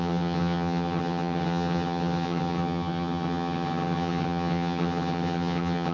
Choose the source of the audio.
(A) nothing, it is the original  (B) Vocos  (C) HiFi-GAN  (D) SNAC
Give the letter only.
C